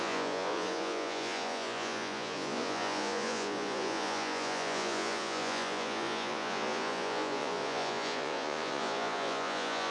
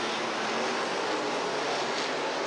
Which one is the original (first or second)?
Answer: second